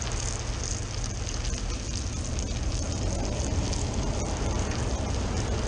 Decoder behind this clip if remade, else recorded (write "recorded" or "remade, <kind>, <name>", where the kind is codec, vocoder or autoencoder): recorded